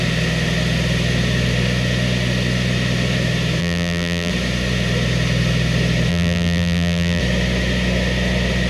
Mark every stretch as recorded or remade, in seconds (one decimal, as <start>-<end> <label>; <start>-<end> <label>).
0.0-3.6 recorded; 3.6-4.3 remade; 4.3-6.1 recorded; 6.1-7.2 remade; 7.2-8.7 recorded